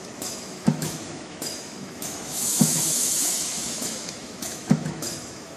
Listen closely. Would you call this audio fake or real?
fake